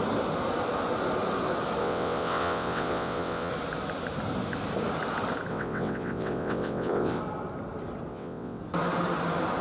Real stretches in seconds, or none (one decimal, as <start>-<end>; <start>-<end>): 0.0-1.8; 3.5-5.5; 7.2-8.1; 8.6-9.6